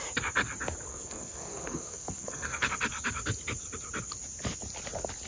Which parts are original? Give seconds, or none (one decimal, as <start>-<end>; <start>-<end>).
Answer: 0.0-0.9; 2.7-5.3